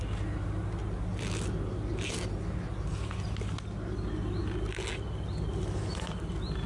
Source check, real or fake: real